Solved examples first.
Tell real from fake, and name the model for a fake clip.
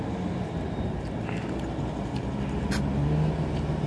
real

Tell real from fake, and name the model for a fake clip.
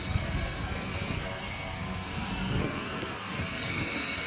fake, codec, SNAC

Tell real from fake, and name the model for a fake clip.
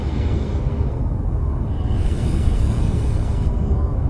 fake, codec, SNAC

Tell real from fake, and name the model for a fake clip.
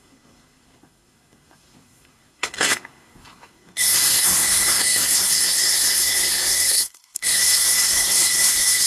fake, codec, SNAC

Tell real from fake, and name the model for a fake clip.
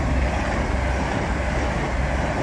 real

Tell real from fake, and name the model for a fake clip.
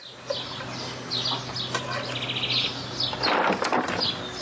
real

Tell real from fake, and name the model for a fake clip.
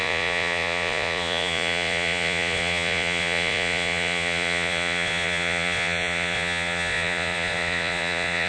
fake, vocoder, Vocos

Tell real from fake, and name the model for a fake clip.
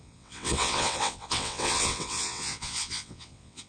fake, vocoder, WaveNeXt